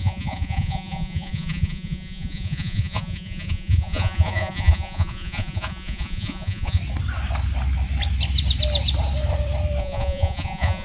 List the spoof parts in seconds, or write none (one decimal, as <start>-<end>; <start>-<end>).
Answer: 0.0-6.8; 9.8-10.8